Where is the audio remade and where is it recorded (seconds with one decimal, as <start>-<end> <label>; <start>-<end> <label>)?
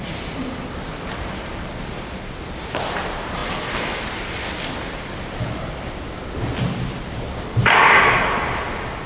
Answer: 0.0-9.1 recorded